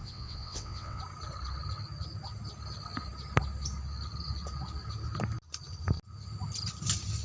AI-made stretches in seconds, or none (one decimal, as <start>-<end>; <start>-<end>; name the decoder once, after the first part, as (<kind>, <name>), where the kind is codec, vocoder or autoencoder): 0.0-1.0 (vocoder, WaveNeXt)